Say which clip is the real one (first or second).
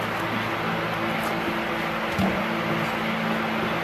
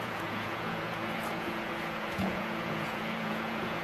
first